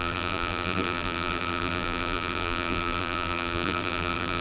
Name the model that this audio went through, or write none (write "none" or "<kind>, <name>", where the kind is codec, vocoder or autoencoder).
vocoder, BigVGAN v2